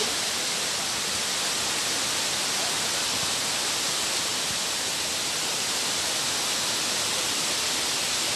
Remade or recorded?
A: recorded